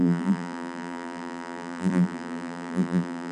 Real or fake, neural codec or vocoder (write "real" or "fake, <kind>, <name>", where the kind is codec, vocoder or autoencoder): fake, vocoder, BigVGAN v2